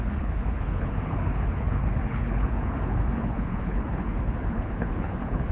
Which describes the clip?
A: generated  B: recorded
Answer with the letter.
A